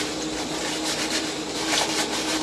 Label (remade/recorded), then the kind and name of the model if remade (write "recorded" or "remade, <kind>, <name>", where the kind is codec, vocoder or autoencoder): recorded